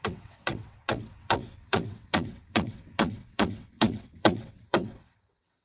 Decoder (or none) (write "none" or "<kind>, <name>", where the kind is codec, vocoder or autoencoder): vocoder, WaveNeXt